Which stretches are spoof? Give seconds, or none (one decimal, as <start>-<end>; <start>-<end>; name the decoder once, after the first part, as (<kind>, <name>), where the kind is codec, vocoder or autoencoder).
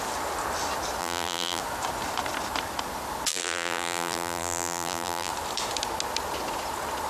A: 1.0-1.6 (vocoder, BigVGAN v2); 3.3-5.3